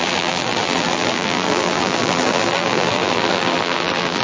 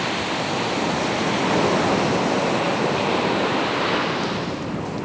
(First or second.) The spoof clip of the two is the first